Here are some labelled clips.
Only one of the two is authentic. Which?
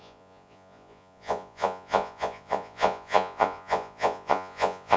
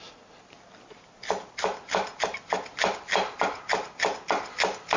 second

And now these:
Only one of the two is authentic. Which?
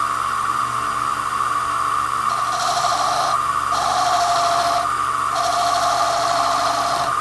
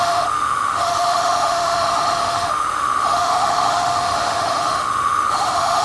first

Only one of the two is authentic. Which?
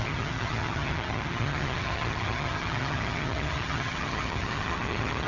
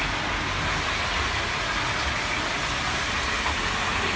second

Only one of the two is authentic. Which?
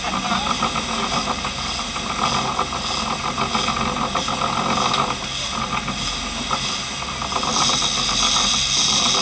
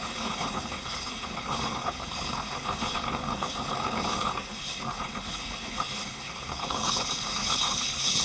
first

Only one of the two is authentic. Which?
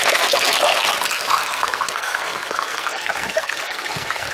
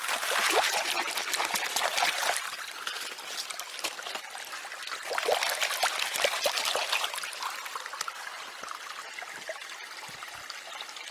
second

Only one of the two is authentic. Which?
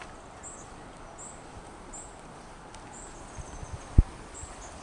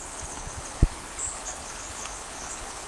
first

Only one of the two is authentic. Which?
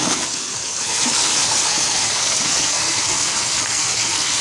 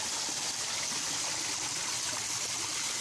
second